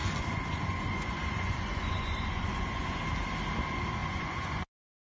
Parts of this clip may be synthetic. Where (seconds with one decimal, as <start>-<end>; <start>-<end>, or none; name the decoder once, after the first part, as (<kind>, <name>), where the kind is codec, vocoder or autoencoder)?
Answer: 0.0-3.0 (vocoder, Vocos); 4.0-5.0